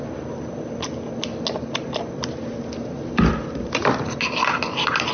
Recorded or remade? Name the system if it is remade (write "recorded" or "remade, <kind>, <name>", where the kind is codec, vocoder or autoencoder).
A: recorded